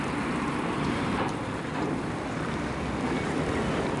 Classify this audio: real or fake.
real